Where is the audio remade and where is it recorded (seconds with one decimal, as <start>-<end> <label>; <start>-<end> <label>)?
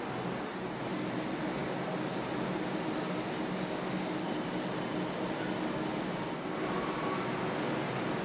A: 0.0-8.2 recorded